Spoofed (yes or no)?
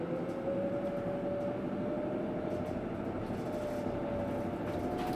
no